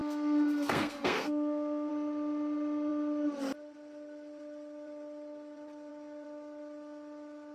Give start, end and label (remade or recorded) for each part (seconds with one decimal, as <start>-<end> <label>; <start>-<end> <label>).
0.0-1.9 remade; 1.9-7.5 recorded